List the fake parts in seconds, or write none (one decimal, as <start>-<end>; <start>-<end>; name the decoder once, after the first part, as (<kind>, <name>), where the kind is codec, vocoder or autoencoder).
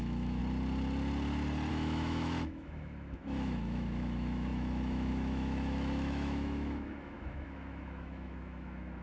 0.0-0.4 (autoencoder, DAC-VAE); 1.7-9.0